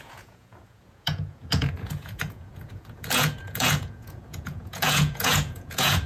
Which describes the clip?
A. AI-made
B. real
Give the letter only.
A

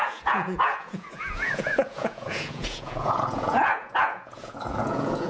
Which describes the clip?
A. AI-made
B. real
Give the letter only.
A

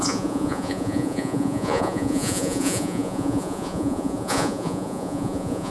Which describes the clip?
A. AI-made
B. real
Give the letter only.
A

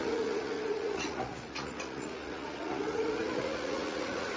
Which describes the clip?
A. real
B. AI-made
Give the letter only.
B